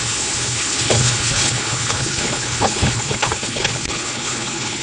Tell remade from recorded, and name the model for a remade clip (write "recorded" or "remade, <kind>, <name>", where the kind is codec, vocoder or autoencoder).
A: remade, codec, HILCodec